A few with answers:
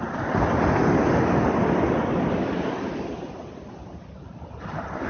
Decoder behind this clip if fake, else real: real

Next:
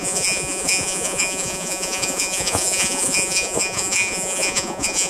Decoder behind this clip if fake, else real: fake, vocoder, Vocos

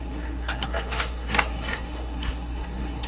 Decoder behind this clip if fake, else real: fake, codec, SNAC